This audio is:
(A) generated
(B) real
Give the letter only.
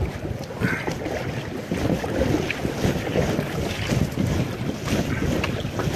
B